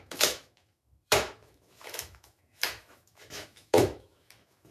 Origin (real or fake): fake